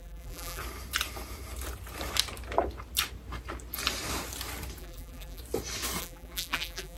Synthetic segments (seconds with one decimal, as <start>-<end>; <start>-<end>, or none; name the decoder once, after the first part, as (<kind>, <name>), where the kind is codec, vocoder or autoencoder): 0.0-0.6 (vocoder, BigVGAN v2); 4.8-5.4; 6.0-7.0